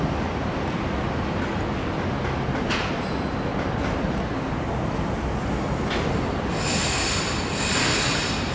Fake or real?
real